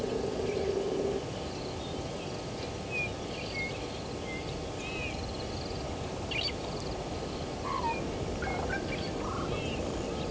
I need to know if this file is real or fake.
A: real